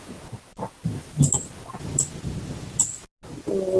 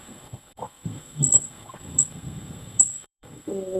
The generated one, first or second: second